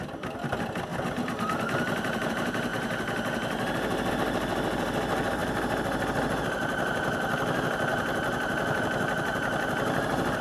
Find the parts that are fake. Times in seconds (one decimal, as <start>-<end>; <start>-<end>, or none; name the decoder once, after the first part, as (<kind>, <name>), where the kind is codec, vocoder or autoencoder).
5.4-6.4 (vocoder, BigVGAN v2)